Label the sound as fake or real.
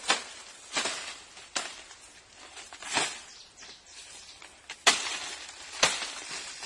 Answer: fake